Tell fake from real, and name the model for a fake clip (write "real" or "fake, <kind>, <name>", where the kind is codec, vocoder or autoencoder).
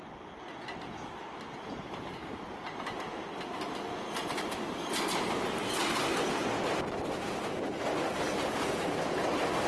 real